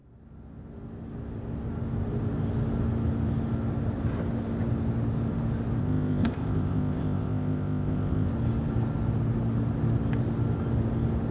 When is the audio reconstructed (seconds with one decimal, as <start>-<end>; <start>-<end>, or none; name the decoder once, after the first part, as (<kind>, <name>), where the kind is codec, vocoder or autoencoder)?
5.8-8.3 (codec, ZipCodec)